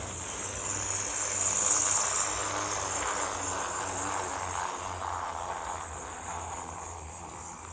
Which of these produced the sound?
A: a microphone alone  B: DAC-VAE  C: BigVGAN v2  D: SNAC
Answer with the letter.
A